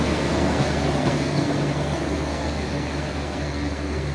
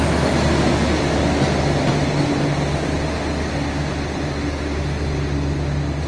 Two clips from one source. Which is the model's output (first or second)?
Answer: first